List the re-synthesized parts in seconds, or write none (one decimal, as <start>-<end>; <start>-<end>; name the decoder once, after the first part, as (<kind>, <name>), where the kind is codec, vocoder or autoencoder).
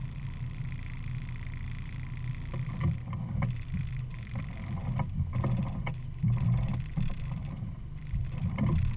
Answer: 0.0-4.6 (vocoder, BigVGAN v2); 7.4-9.0